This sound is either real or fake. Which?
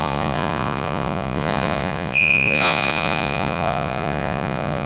fake